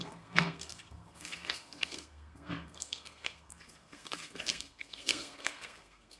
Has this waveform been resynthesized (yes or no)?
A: yes